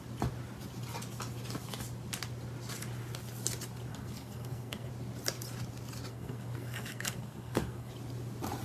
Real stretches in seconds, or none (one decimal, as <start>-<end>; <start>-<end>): 0.0-3.9; 4.9-6.1; 7.9-8.6